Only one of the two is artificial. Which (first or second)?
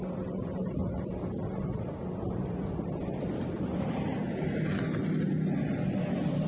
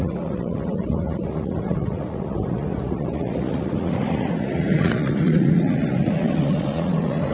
second